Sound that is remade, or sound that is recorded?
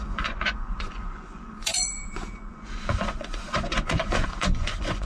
remade